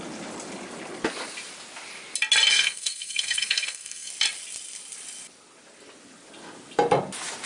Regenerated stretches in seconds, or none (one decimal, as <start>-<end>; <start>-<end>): 2.5-4.1